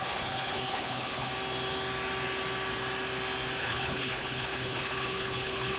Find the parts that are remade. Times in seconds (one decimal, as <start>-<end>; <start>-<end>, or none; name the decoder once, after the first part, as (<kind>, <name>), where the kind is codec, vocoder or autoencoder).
0.0-1.3 (codec, HILCodec); 3.6-5.8